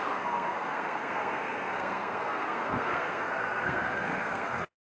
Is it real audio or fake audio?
fake